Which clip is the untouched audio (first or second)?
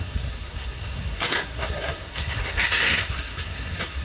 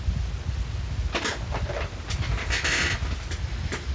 second